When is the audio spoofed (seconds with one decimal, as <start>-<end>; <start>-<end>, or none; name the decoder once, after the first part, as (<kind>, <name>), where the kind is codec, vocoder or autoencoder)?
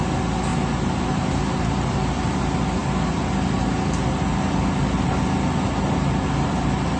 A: none